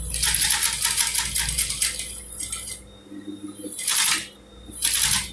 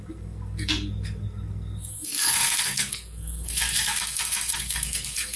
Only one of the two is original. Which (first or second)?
first